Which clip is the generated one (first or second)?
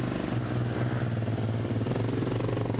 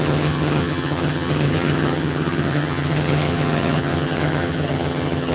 second